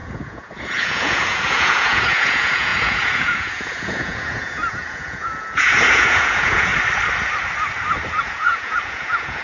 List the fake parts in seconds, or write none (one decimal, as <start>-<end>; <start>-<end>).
0.0-6.7; 8.2-9.4